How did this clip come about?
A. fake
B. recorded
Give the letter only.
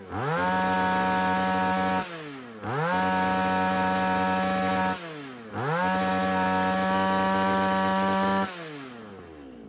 B